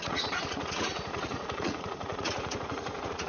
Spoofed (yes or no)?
yes